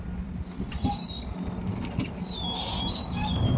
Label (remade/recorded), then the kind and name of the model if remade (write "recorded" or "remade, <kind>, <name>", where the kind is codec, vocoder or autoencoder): recorded